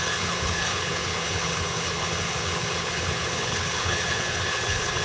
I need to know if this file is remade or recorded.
remade